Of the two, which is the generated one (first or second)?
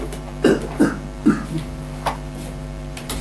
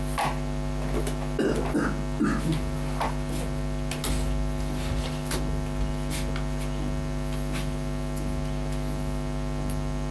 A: first